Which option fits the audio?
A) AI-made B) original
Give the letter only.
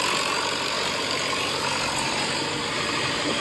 B